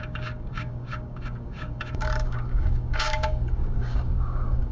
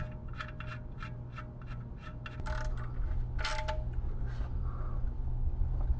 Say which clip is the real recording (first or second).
second